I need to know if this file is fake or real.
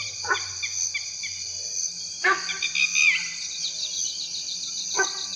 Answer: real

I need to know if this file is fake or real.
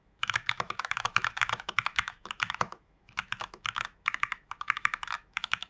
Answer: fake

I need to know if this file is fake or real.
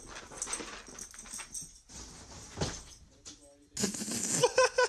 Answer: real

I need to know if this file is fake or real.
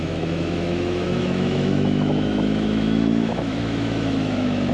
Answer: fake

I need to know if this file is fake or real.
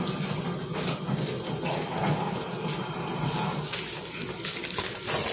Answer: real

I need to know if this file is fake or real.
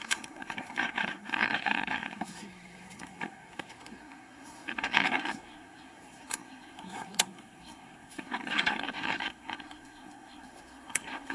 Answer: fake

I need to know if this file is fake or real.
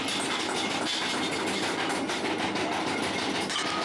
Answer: real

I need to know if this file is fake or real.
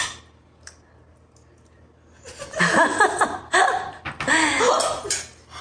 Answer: real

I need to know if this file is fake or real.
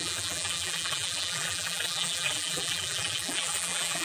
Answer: fake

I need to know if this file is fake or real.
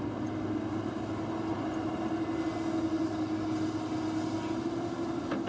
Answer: real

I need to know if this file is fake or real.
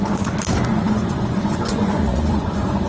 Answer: fake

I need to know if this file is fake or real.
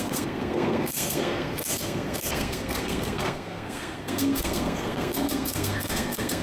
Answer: fake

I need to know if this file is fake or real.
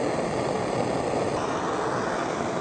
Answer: real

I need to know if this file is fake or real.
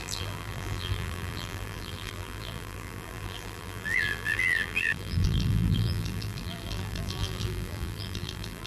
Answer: fake